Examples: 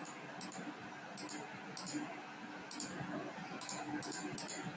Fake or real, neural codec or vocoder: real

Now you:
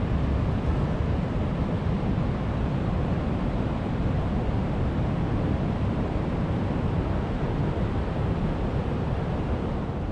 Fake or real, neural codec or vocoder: real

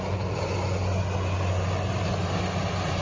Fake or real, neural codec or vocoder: real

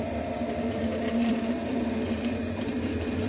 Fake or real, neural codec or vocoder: fake, vocoder, BigVGAN v2